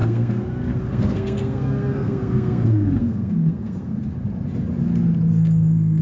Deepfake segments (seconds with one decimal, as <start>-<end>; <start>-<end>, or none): 0.0-4.0; 5.3-6.0